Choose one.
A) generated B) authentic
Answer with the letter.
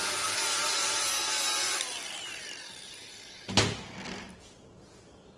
B